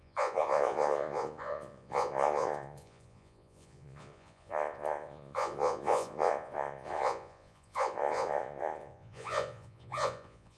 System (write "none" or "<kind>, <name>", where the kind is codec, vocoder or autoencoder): vocoder, Vocos